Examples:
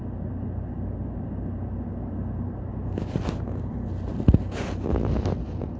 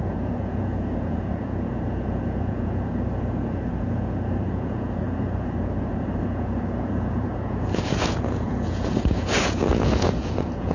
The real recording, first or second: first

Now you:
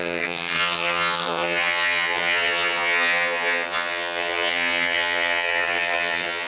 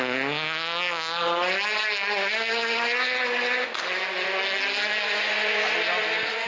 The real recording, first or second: second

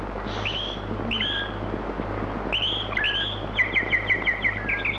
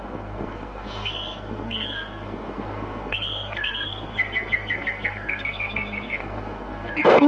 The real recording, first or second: first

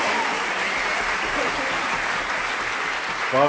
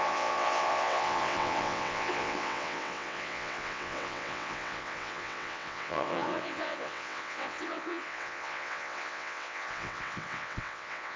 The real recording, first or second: first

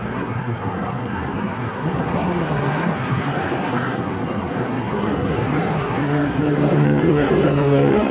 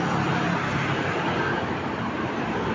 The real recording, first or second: second